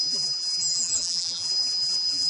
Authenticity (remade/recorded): remade